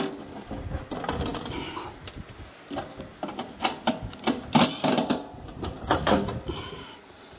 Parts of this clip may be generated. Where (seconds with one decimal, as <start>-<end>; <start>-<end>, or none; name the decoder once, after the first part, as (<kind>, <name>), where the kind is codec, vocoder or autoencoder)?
none